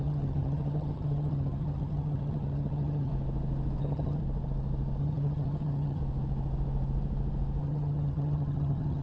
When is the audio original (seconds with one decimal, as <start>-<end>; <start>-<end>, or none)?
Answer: 3.1-3.8; 4.2-5.0; 6.0-7.6